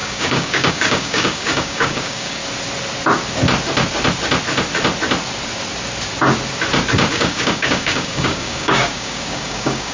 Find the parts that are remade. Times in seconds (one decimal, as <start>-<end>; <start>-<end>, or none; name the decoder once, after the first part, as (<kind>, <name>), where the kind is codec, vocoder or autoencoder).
0.0-2.4 (codec, DAC); 7.1-9.9